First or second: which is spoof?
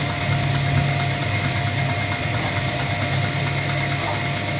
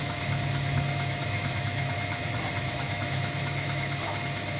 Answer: second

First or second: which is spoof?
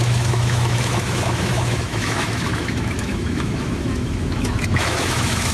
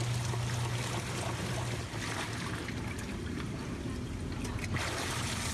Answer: first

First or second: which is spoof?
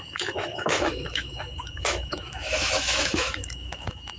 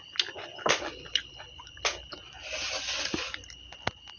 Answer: first